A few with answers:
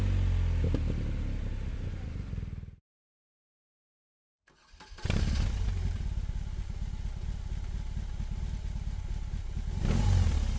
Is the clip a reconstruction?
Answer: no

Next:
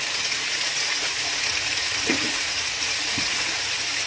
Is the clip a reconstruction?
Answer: yes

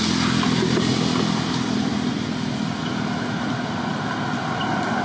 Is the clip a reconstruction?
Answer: no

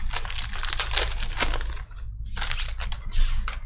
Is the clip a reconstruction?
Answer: no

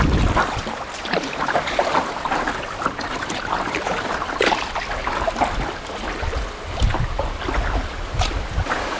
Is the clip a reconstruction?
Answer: no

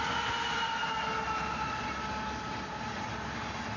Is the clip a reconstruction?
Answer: no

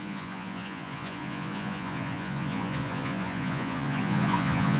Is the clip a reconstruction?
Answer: yes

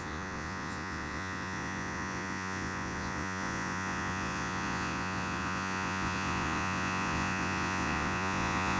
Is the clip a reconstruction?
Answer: yes